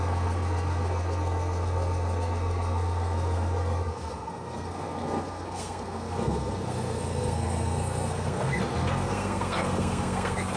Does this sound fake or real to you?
fake